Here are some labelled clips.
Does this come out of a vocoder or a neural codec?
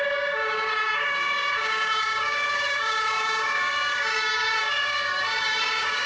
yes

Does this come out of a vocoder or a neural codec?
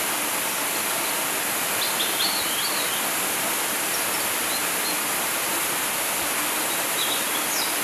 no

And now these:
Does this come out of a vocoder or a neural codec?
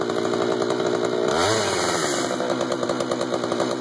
no